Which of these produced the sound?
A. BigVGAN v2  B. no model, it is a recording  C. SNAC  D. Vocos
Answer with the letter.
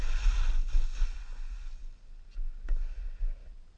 B